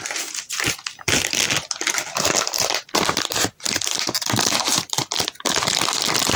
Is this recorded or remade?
recorded